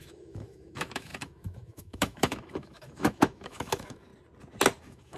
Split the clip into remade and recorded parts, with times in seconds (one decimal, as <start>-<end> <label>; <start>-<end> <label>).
0.0-4.1 remade; 4.1-4.8 recorded; 4.8-5.2 remade